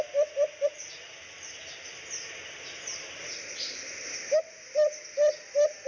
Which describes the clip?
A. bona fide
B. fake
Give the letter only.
A